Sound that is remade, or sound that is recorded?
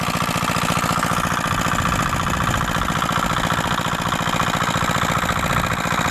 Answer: recorded